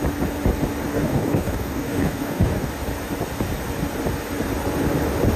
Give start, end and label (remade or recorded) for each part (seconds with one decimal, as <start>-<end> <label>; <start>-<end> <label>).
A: 0.0-0.9 recorded; 0.9-2.7 remade; 2.7-5.4 recorded